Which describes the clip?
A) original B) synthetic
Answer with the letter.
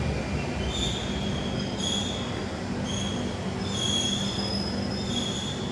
A